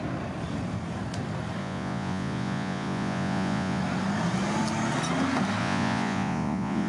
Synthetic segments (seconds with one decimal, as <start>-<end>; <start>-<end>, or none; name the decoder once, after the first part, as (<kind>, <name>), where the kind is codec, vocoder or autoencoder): 1.6-3.8 (vocoder, Vocos); 5.6-6.9

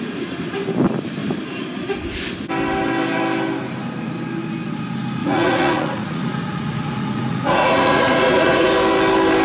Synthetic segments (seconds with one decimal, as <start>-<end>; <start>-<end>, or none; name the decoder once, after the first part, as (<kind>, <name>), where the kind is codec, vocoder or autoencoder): 5.2-8.7 (vocoder, Vocos)

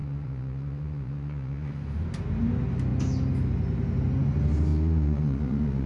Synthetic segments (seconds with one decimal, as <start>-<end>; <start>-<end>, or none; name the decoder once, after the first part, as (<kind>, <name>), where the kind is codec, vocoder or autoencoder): 0.0-1.8 (vocoder, Vocos); 4.7-5.9

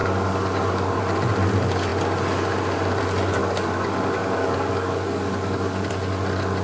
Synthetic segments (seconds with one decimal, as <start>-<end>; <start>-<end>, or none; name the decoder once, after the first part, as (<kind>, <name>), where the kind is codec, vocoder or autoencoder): 0.0-1.0 (codec, DAC); 3.4-5.9

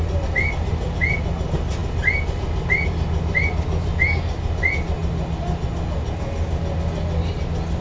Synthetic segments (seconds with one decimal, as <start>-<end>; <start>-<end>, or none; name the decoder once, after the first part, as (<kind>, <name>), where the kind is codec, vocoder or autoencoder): none